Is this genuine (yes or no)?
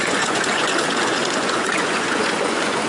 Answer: no